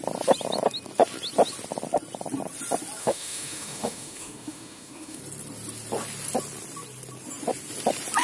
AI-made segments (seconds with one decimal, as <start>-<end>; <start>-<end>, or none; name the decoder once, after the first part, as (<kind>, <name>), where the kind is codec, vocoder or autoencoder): 3.0-5.2 (autoencoder, DAC-VAE)